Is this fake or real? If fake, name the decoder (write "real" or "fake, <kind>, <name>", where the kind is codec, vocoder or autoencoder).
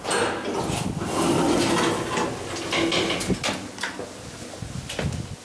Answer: real